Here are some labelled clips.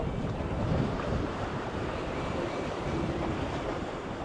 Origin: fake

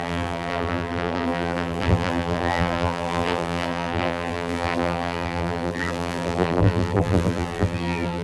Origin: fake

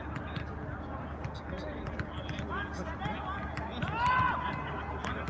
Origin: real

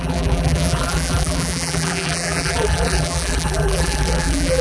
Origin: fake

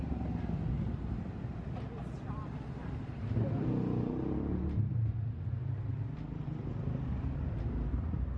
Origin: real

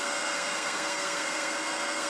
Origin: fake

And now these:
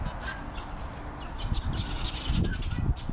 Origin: real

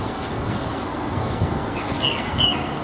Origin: fake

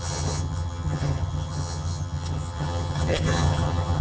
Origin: fake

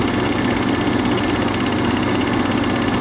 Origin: real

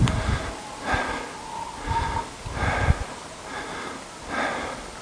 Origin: real